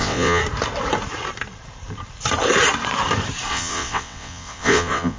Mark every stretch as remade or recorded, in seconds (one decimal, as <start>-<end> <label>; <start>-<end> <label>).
0.0-0.4 remade; 0.4-3.5 recorded; 3.5-5.2 remade